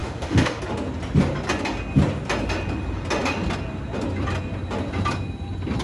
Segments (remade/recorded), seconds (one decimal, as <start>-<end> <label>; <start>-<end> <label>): 0.0-0.6 remade; 0.6-5.8 recorded